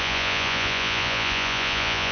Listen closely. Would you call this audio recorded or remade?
remade